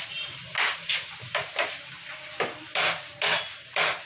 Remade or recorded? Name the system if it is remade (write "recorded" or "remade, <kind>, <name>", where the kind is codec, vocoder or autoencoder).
recorded